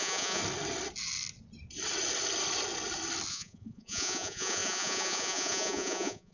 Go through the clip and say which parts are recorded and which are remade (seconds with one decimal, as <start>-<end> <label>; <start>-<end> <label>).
0.0-0.4 remade; 0.4-3.3 recorded; 3.3-6.3 remade